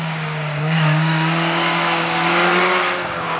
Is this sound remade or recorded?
remade